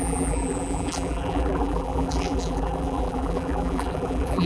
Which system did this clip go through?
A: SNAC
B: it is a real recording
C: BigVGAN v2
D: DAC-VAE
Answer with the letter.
C